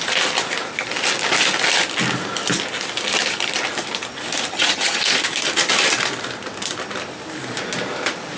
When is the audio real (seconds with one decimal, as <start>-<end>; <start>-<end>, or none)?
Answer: 0.0-4.5; 5.0-8.4